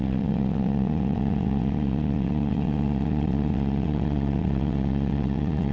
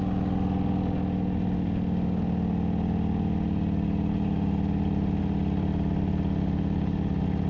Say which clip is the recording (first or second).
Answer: second